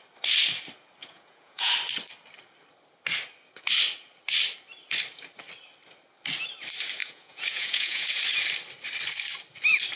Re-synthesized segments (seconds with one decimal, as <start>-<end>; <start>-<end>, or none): 1.0-1.7; 7.0-8.2

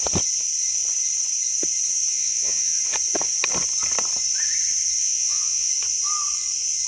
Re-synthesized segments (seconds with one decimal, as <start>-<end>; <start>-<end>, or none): 2.1-2.8; 5.0-5.7

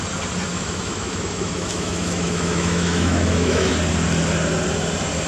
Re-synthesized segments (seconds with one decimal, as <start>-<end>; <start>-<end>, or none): 0.5-3.7

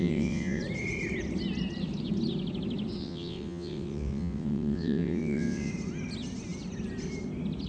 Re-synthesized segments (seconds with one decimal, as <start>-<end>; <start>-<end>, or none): 0.0-0.6; 3.0-5.7

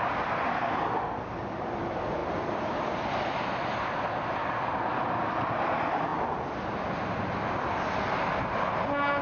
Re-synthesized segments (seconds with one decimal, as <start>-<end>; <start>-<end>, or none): none

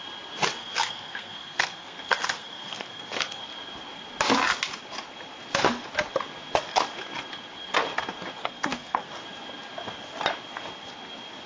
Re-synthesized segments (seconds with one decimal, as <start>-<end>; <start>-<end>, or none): 0.6-3.4; 8.4-9.1

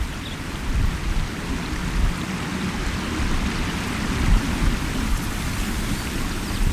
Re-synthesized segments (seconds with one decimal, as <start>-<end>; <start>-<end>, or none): none